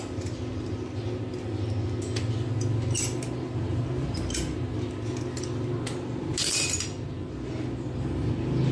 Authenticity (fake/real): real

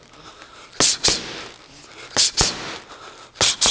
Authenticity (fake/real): real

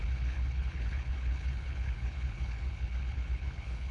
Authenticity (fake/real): fake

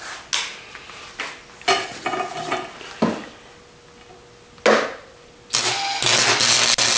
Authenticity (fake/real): real